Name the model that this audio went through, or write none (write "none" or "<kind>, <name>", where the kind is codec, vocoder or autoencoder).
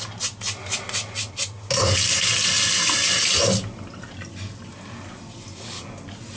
none